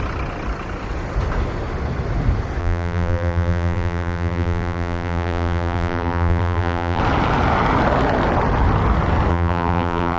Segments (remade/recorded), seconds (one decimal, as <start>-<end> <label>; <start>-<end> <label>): 0.0-2.6 recorded; 2.6-7.0 remade; 7.0-9.3 recorded; 9.3-10.2 remade

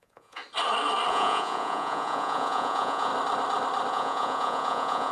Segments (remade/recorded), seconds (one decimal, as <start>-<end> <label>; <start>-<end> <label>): 0.0-0.4 remade; 0.4-1.1 recorded; 1.1-3.1 remade; 3.1-3.9 recorded; 3.9-5.1 remade

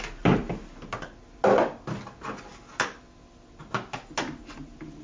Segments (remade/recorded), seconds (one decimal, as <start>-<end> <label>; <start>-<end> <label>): 0.0-5.0 recorded

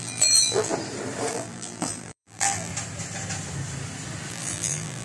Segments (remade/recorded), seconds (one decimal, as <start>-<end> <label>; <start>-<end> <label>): 0.0-0.7 remade; 0.7-1.3 recorded; 1.3-2.7 remade; 2.7-4.3 recorded; 4.3-5.0 remade

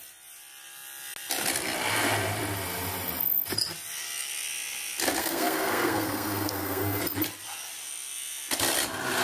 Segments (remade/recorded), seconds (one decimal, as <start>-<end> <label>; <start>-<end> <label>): 0.0-5.2 recorded; 5.2-7.0 remade; 7.0-9.2 recorded